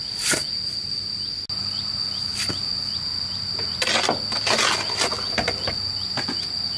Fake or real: real